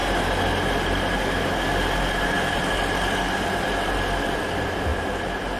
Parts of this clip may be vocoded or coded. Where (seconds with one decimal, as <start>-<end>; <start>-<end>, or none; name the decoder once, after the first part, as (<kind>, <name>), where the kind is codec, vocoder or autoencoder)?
none